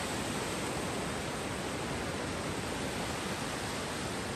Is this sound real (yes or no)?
yes